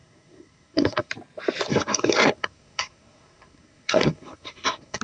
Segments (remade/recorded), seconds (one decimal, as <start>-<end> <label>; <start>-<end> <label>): 0.0-1.1 remade; 1.1-1.7 recorded; 1.7-5.0 remade

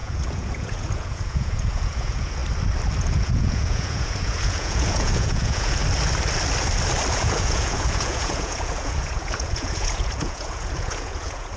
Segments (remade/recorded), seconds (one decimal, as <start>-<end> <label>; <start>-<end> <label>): 0.0-2.4 remade; 2.4-3.0 recorded; 3.0-5.8 remade; 5.8-7.1 recorded; 7.1-11.6 remade

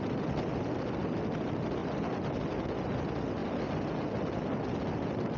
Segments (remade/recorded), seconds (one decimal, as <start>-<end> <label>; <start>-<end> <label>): 0.0-5.4 recorded

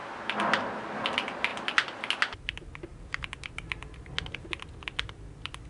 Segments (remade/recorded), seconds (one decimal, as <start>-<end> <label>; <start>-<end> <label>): 0.0-5.7 recorded

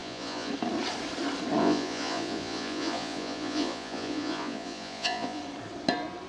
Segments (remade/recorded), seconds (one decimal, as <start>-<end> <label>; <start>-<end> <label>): 0.0-0.5 remade; 0.5-1.6 recorded; 1.6-5.4 remade; 5.4-6.3 recorded

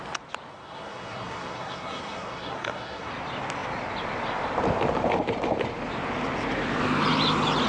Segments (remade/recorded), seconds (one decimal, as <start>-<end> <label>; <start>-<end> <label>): 0.0-0.5 recorded; 0.5-3.1 remade; 3.1-7.7 recorded